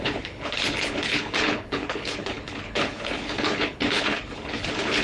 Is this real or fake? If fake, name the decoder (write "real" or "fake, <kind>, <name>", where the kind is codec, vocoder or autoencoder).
fake, codec, HILCodec